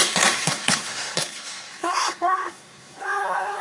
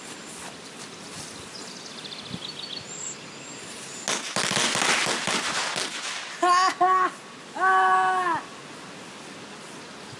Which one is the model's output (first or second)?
first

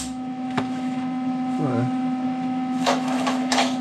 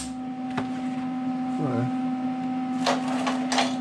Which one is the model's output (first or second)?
first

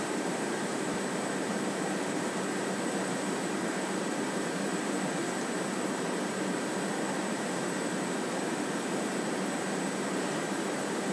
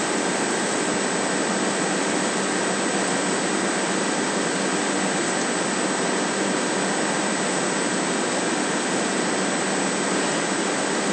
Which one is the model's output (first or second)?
first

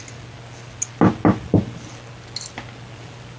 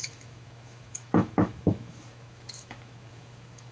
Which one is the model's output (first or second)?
second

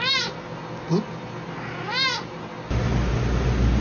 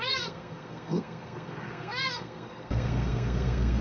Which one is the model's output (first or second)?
second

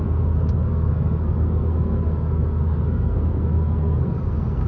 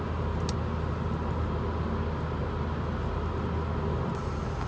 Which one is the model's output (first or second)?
first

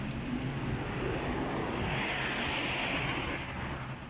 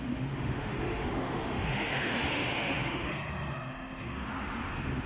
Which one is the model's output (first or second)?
second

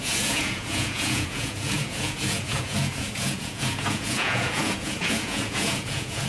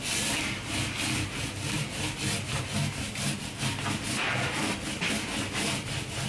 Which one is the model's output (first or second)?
first